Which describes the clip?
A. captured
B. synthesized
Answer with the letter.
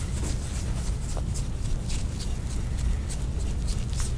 A